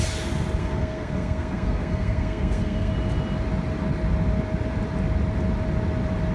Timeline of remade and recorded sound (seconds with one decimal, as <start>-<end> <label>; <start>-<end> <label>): 0.0-0.6 recorded; 0.6-2.9 remade; 2.9-6.3 recorded